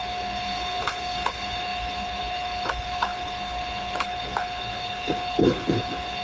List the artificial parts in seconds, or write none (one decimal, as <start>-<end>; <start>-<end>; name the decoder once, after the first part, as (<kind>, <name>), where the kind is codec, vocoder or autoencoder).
0.0-6.2 (codec, HILCodec)